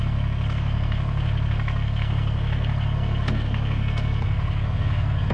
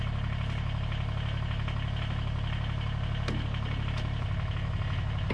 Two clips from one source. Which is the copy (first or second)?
first